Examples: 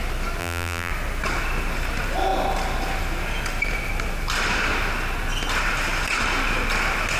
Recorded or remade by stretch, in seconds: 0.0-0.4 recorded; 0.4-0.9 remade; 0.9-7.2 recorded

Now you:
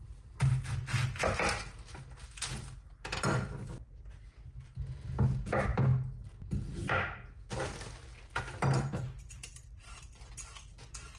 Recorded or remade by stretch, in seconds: 0.0-8.1 recorded; 8.1-10.3 remade; 10.3-11.2 recorded

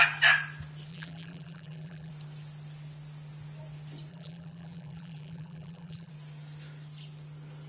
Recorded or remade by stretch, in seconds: 0.0-0.9 recorded; 0.9-2.1 remade; 2.1-4.1 recorded; 4.1-6.1 remade; 6.1-7.7 recorded

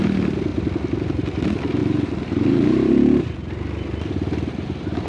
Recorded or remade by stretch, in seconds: 0.0-0.5 recorded; 0.5-1.3 remade; 1.3-1.8 recorded; 1.8-5.1 remade

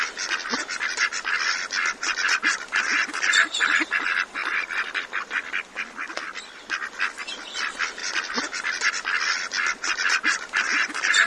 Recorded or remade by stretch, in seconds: 0.0-0.6 recorded; 0.6-1.3 remade; 1.3-8.0 recorded; 8.0-8.9 remade; 8.9-11.3 recorded

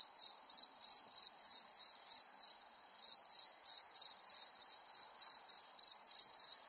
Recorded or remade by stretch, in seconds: 0.0-1.5 remade; 1.5-5.0 recorded; 5.0-6.7 remade

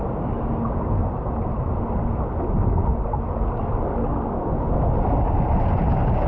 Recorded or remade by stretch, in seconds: 0.0-1.0 recorded; 1.0-1.7 remade; 1.7-6.3 recorded

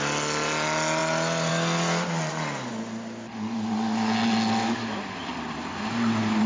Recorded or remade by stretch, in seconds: 0.0-6.5 recorded